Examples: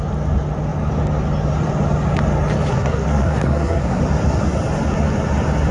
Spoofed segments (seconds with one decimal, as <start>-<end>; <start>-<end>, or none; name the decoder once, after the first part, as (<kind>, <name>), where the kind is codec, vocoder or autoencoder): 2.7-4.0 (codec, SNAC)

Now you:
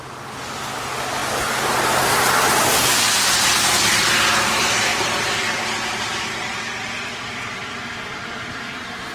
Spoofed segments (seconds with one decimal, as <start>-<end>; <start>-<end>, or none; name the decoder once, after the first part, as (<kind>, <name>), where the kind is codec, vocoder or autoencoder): none

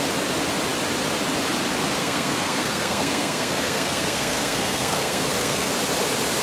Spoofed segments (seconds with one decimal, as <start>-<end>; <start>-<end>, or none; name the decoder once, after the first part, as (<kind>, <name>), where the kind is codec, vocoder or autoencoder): 2.0-5.7 (codec, SNAC)

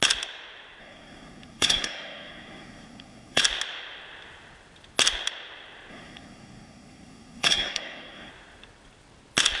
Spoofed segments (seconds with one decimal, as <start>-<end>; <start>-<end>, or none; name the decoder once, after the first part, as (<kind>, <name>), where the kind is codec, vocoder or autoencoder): 0.8-3.4 (codec, SNAC); 5.9-8.3

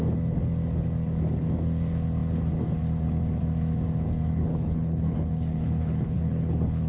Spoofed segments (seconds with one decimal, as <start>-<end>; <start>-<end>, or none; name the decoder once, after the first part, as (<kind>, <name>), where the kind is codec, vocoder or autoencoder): 4.3-6.9 (codec, HILCodec)

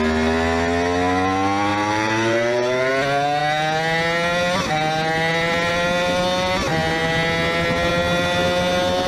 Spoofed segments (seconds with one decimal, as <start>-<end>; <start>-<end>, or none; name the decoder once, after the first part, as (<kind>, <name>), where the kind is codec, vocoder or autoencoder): 1.7-2.9 (vocoder, BigVGAN v2)